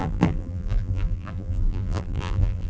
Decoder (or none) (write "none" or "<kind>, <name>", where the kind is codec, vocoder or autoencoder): vocoder, BigVGAN v2